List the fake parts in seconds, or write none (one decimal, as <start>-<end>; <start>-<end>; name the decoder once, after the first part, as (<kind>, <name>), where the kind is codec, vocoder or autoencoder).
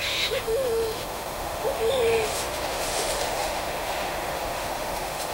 0.0-5.3 (autoencoder, DAC-VAE)